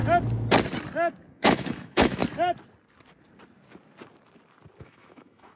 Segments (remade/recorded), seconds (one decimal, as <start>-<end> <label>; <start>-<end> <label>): 0.0-1.3 recorded; 1.3-2.2 remade; 2.2-4.8 recorded; 4.8-5.6 remade